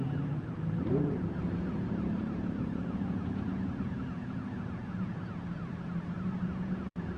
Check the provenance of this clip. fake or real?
fake